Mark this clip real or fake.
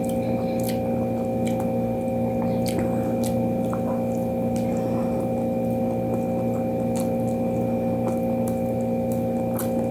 real